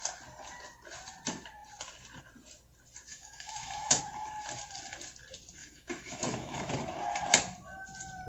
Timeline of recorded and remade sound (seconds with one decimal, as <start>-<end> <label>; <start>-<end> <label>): 0.0-3.1 recorded; 3.1-4.0 remade; 4.0-5.6 recorded; 5.6-6.7 remade; 6.7-8.3 recorded